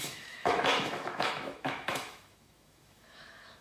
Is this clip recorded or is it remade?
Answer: remade